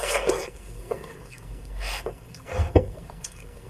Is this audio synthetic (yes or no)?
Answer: yes